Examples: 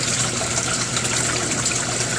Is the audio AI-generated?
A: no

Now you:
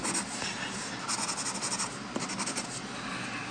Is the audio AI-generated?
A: no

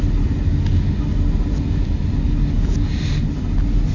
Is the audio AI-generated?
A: no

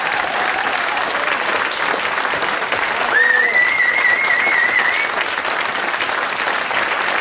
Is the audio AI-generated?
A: no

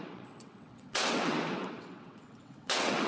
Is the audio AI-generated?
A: yes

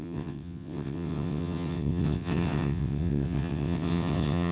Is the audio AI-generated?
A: yes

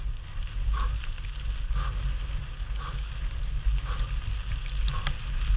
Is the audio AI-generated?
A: no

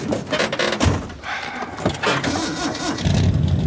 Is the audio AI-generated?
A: no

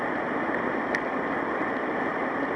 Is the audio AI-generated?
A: no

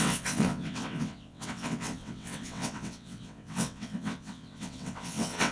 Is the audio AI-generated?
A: yes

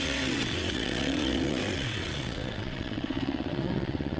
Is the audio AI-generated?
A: yes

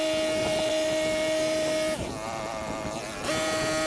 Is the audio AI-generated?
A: no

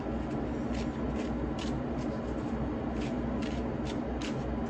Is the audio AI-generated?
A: no